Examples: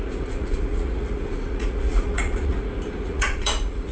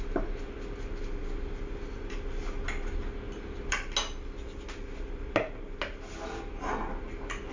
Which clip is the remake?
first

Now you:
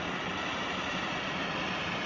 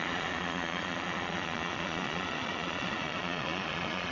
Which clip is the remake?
second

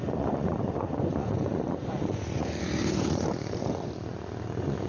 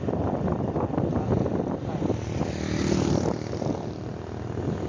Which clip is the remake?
first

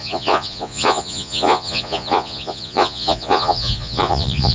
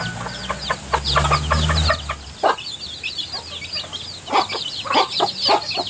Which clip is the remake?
first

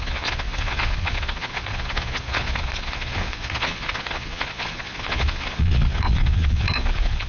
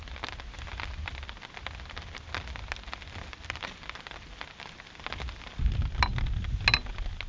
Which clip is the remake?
first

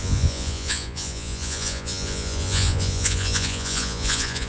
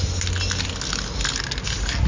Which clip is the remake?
first